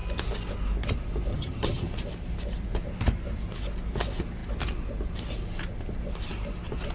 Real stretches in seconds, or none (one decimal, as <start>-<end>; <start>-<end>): 0.0-1.3; 1.9-6.9